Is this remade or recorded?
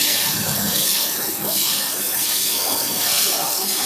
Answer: remade